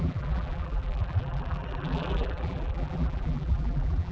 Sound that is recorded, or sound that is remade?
remade